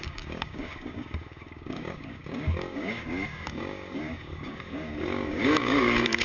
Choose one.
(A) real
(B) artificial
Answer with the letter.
B